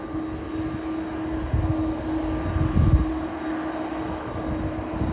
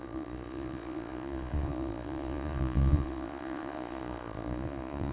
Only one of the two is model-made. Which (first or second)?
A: second